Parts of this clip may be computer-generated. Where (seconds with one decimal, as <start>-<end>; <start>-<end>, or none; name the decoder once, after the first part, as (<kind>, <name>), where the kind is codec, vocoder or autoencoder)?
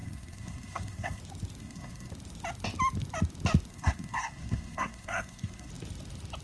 0.0-1.2 (codec, SNAC); 1.6-2.1; 3.7-5.7